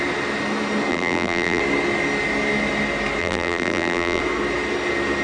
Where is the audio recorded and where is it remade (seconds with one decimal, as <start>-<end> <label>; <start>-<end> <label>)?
0.0-0.9 recorded; 0.9-1.6 remade; 1.6-3.2 recorded; 3.2-4.2 remade; 4.2-5.2 recorded